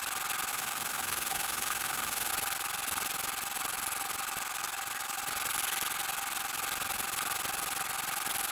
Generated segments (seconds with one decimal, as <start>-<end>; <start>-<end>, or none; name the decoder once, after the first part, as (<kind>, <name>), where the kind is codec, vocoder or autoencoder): 0.5-2.3 (autoencoder, DAC-VAE)